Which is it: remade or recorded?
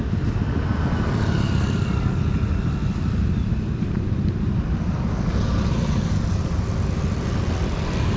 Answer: recorded